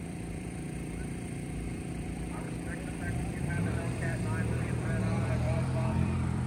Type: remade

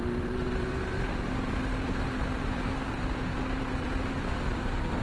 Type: remade